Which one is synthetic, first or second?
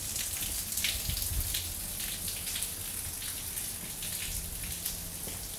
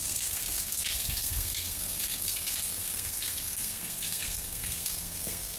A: second